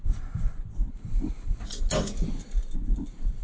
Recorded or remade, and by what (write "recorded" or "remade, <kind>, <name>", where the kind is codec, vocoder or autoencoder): recorded